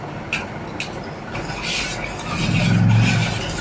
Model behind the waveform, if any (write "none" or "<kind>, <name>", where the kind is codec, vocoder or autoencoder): none